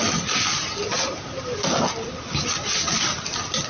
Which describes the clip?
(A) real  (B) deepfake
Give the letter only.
A